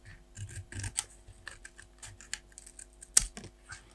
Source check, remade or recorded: recorded